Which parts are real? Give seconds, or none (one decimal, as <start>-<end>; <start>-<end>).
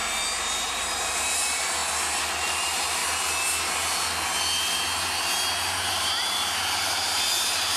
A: 0.0-0.6; 1.8-2.3; 3.0-5.9